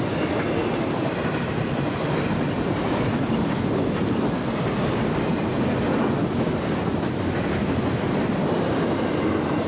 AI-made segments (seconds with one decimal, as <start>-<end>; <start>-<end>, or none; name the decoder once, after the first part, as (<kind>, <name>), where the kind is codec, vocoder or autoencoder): 0.6-4.7 (vocoder, BigVGAN v2)